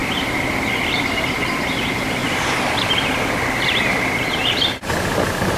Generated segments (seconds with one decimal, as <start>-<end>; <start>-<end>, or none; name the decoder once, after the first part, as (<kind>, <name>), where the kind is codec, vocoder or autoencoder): 0.0-1.6 (vocoder, BigVGAN v2); 2.2-3.1